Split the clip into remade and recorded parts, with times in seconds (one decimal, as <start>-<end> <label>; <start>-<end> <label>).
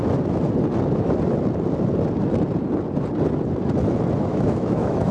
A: 0.0-4.3 recorded; 4.3-5.1 remade